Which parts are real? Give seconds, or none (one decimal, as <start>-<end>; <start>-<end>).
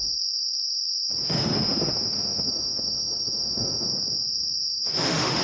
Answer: 0.0-1.2; 3.9-4.7